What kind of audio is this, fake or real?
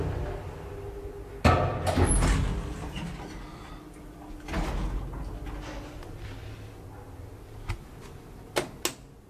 real